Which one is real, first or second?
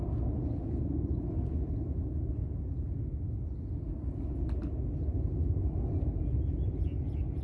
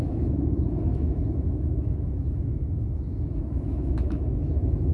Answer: first